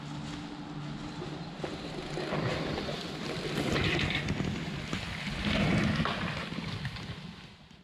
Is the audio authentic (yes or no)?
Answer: yes